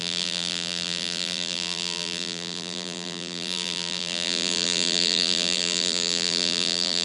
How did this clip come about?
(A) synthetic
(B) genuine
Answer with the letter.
A